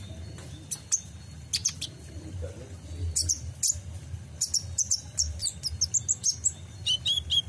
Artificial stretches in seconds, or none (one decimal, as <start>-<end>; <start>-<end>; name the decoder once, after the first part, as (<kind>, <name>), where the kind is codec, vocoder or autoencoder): none